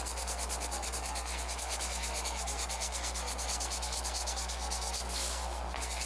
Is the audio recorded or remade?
remade